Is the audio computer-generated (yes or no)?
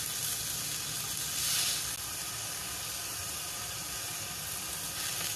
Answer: no